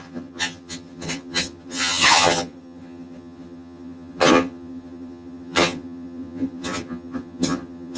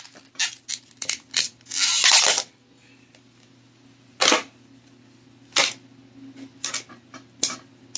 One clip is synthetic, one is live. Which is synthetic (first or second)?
first